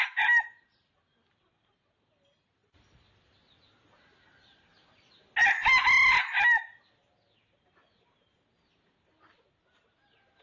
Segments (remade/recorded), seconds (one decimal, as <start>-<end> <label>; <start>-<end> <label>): 0.0-10.4 recorded